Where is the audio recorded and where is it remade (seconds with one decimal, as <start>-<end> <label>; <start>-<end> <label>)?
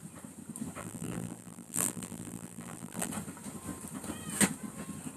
0.0-0.8 recorded; 0.8-3.1 remade; 3.1-5.2 recorded